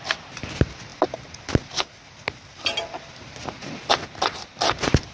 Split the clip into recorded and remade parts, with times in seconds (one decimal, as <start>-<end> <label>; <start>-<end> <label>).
0.0-5.1 recorded